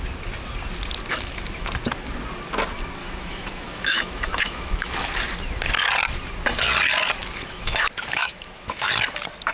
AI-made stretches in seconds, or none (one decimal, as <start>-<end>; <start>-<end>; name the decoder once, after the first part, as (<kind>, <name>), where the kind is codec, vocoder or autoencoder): 1.1-1.7 (autoencoder, DAC-VAE); 3.0-5.2; 7.2-8.9